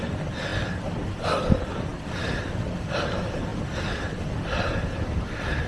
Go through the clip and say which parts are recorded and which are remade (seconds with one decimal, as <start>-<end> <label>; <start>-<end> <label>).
0.0-5.7 recorded